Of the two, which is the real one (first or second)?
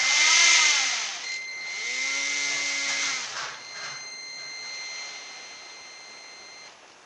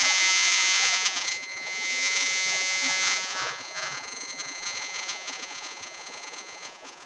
first